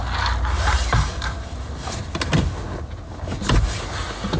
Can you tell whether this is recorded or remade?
recorded